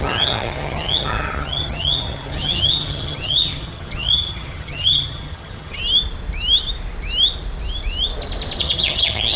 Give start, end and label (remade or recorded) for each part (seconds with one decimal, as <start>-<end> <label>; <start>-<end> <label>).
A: 0.0-5.8 remade; 5.8-8.6 recorded; 8.6-9.4 remade